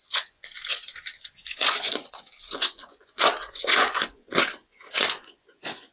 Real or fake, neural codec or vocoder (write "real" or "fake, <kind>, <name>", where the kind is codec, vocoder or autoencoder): fake, vocoder, Vocos